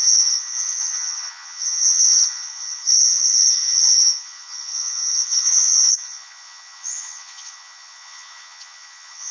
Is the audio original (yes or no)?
no